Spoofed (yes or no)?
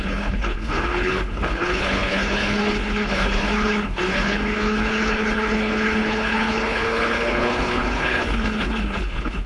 yes